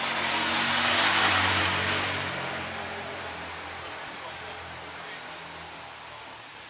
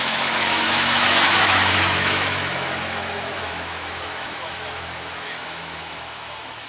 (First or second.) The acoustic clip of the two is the first